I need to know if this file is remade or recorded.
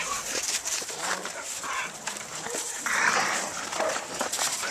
remade